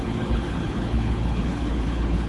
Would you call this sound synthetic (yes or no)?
yes